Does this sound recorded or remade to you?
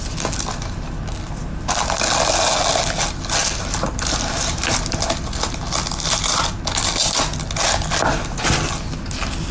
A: recorded